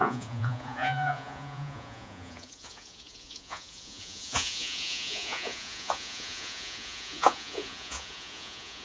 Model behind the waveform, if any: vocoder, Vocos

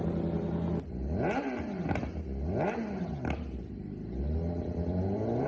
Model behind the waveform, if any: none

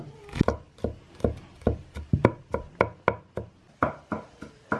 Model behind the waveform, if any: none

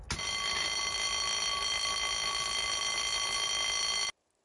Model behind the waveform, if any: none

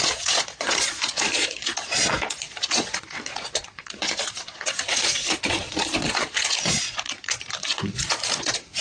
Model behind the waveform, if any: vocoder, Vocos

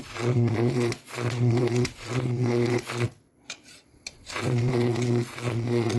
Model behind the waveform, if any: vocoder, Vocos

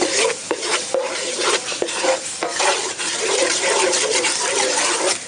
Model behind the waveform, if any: vocoder, BigVGAN v2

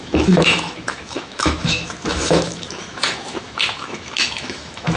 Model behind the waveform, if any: autoencoder, DAC-VAE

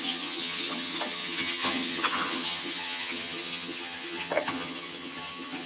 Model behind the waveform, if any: vocoder, HiFi-GAN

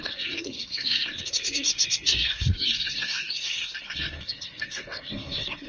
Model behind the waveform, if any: codec, SNAC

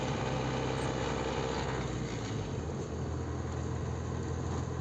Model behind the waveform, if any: none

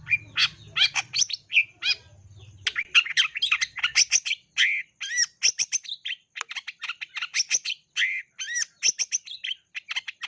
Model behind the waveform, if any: none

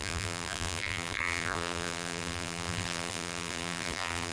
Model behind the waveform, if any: vocoder, BigVGAN v2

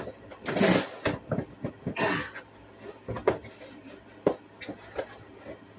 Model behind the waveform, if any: none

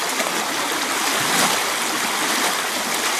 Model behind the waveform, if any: none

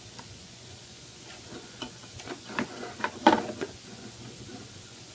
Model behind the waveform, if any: vocoder, Vocos